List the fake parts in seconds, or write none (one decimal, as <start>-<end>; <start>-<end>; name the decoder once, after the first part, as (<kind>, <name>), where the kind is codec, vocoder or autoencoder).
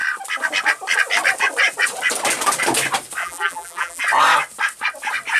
3.2-4.0 (vocoder, BigVGAN v2)